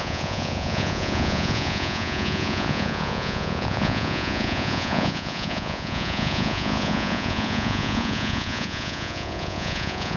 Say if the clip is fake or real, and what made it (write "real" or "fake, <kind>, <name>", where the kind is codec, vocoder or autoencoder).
fake, vocoder, Vocos